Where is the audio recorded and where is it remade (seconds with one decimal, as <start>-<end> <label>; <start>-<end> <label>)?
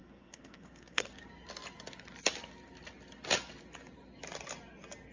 0.0-1.1 remade; 1.1-5.1 recorded